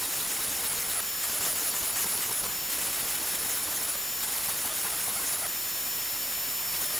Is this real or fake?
real